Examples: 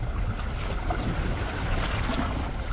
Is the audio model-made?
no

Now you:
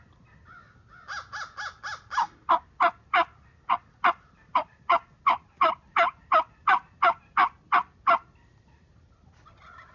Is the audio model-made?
no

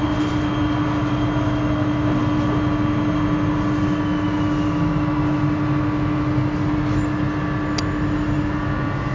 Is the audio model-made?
no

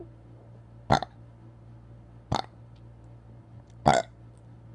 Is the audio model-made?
no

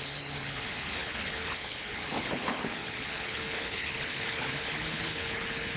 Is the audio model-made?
yes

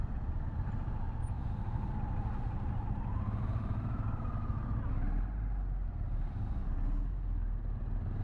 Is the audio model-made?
no